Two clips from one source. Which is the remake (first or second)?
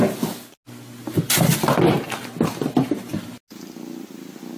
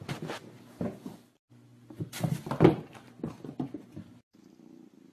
second